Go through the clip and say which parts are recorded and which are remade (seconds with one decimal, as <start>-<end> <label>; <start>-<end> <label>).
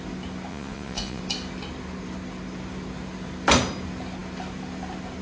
0.0-0.5 recorded; 0.5-1.2 remade; 1.2-5.2 recorded